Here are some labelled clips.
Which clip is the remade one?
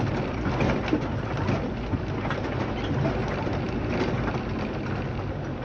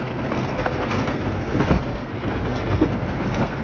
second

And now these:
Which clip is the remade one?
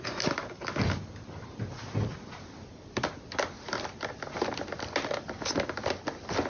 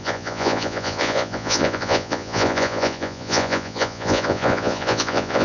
second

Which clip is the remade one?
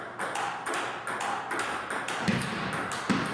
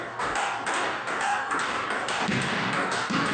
second